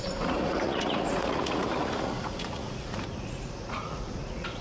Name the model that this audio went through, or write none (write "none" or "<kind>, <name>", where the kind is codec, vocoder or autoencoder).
vocoder, Vocos